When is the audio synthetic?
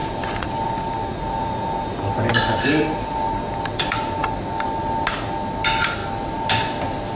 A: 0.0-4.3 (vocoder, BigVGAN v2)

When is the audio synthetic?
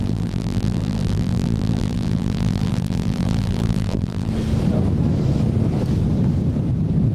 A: 0.0-4.3 (vocoder, BigVGAN v2)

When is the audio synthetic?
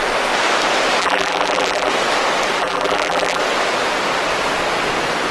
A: 1.0-1.9 (vocoder, BigVGAN v2); 2.6-3.4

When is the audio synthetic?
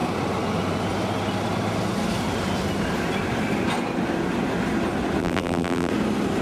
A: 5.2-5.9 (vocoder, BigVGAN v2)